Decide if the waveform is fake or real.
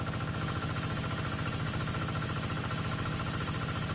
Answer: real